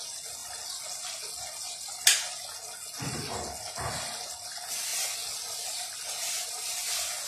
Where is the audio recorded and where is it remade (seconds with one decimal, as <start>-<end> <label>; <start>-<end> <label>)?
0.0-7.3 recorded